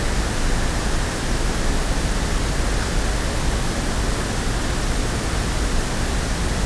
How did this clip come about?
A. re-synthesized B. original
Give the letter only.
B